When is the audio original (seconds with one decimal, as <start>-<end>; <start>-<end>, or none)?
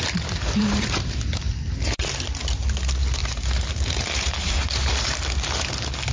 0.0-0.6; 1.5-3.2; 5.2-6.1